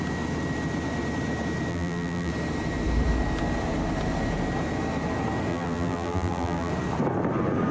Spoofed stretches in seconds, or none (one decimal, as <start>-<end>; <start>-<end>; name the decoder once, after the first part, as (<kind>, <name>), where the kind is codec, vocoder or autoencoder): 1.7-2.3 (vocoder, BigVGAN v2); 5.5-6.7